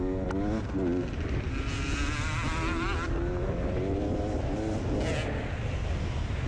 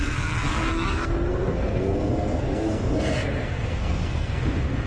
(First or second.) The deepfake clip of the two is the second